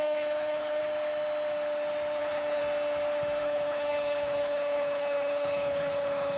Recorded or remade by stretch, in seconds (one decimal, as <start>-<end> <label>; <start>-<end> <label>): 0.0-0.8 remade; 0.8-2.2 recorded; 2.2-2.6 remade; 2.6-3.4 recorded; 3.4-6.4 remade